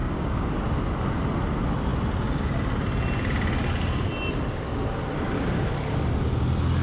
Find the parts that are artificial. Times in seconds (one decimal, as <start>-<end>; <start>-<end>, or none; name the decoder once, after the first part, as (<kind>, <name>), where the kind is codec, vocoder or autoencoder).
0.0-0.5 (codec, DAC)